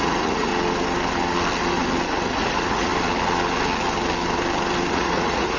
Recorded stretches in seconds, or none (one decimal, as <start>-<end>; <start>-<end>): 0.5-2.2; 2.9-4.9